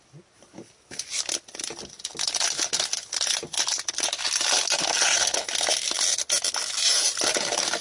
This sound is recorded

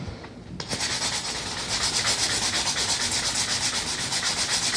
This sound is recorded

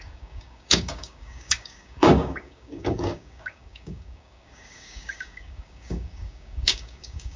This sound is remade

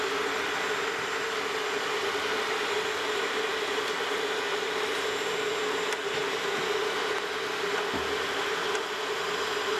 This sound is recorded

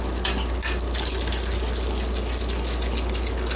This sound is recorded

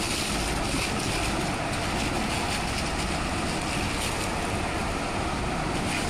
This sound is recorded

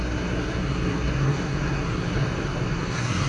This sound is remade